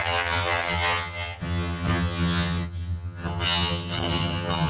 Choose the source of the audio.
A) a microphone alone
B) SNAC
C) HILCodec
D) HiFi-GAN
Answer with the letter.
D